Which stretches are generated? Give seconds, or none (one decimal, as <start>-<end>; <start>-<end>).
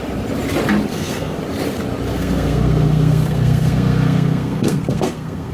0.9-1.4; 2.1-5.5